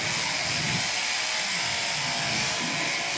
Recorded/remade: recorded